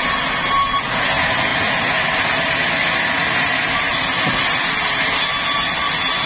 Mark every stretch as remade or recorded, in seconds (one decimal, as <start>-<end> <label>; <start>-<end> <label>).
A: 0.0-6.3 recorded